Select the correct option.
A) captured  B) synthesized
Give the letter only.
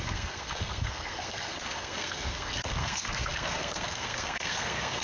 B